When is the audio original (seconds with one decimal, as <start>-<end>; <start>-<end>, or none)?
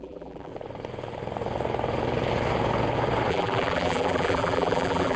0.5-3.3